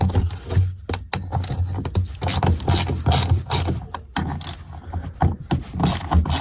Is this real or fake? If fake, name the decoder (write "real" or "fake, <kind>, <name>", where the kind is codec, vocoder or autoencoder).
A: real